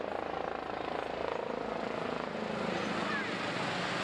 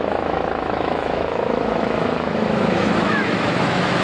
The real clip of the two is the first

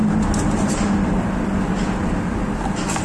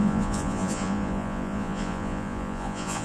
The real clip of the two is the first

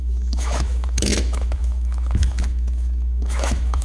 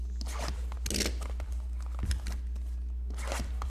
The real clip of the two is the second